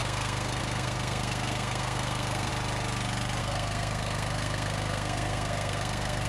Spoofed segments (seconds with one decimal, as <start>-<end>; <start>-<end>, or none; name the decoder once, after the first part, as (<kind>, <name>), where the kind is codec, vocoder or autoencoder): 0.0-2.5 (codec, SNAC); 3.4-6.3